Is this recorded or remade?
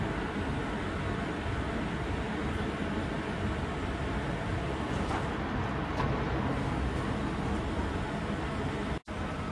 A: recorded